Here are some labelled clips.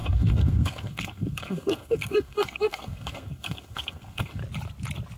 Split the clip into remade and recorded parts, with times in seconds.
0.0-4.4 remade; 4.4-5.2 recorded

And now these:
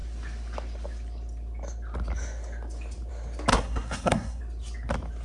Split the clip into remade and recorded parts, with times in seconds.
0.0-3.5 recorded; 3.5-4.4 remade; 4.4-5.2 recorded

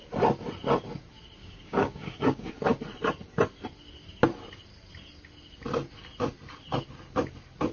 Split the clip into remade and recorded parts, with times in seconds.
0.0-1.4 recorded; 1.4-2.5 remade; 2.5-7.7 recorded

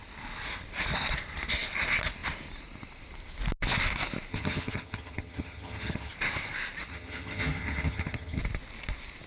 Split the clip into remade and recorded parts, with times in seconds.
0.0-4.3 recorded; 4.3-6.1 remade; 6.1-6.9 recorded; 6.9-8.4 remade; 8.4-9.3 recorded